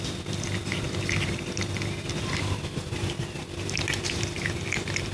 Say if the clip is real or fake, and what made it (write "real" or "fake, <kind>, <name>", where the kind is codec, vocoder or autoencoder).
fake, vocoder, BigVGAN v2